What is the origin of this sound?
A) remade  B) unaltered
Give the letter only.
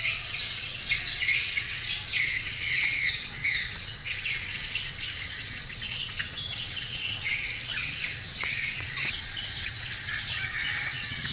A